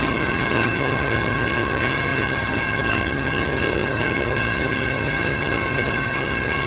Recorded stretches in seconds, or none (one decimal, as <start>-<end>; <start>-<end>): none